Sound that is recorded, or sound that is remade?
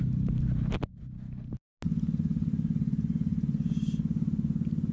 recorded